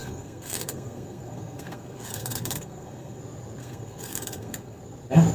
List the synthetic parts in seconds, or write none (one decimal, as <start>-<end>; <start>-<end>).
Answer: 0.0-3.2; 3.6-4.8